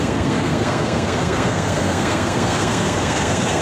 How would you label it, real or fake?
fake